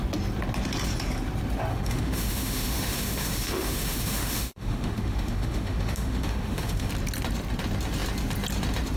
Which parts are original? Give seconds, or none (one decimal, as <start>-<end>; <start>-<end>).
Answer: 0.0-1.7; 6.9-9.0